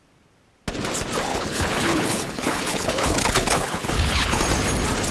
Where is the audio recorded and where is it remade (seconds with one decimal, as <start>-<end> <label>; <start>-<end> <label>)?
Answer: 0.0-1.3 recorded; 1.3-4.4 remade; 4.4-5.1 recorded